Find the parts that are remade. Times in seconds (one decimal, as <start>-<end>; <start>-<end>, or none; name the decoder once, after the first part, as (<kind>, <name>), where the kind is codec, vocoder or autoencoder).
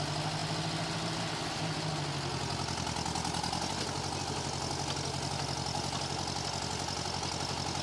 none